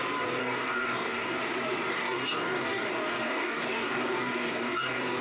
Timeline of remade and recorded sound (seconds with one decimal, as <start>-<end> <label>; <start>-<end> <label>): 0.0-0.4 recorded; 0.4-1.4 remade; 1.4-1.9 recorded; 1.9-5.2 remade